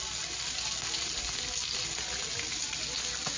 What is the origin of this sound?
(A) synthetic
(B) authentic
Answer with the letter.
B